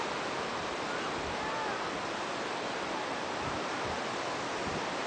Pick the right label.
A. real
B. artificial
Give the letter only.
A